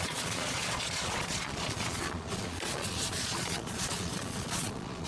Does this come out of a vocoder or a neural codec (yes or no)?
yes